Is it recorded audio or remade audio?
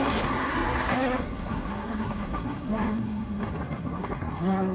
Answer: remade